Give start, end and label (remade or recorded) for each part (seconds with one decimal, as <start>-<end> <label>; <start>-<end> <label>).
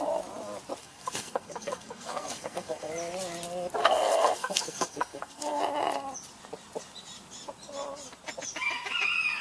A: 0.0-0.8 recorded; 0.8-2.9 remade; 2.9-3.8 recorded; 3.8-5.6 remade; 5.6-9.4 recorded